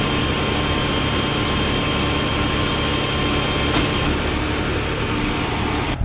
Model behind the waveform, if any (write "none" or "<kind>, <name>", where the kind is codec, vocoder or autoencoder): none